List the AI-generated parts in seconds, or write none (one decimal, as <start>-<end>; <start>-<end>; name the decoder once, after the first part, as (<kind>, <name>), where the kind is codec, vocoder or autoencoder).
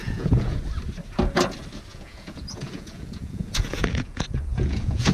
0.0-0.6 (vocoder, Vocos); 1.9-5.1